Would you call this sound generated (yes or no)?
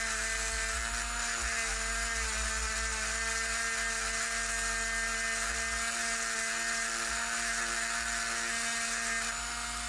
no